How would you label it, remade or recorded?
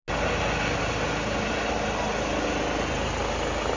recorded